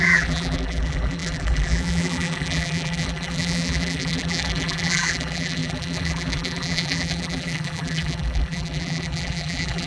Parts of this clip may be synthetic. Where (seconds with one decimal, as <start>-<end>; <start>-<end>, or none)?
0.0-9.9